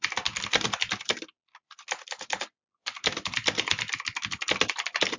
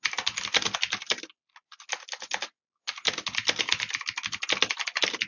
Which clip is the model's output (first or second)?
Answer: first